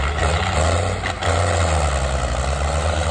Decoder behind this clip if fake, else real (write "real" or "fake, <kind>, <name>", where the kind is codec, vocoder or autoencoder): real